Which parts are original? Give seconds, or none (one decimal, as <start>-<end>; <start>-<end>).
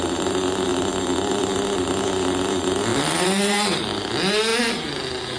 0.0-2.9; 4.1-5.4